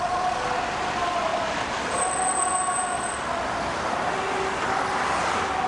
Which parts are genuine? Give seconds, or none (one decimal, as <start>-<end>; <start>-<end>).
0.0-5.7